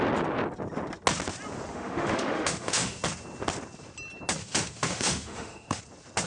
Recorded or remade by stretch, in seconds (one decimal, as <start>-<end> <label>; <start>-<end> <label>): 0.0-1.7 recorded; 1.7-3.0 remade; 3.0-4.4 recorded; 4.4-5.8 remade; 5.8-6.3 recorded